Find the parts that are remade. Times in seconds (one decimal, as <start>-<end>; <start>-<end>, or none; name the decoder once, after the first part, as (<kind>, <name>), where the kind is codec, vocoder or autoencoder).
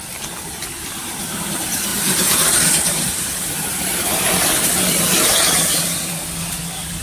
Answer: 1.9-6.1 (vocoder, BigVGAN v2)